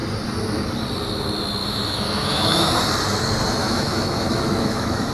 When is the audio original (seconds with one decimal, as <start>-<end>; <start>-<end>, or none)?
0.0-1.6; 2.8-3.6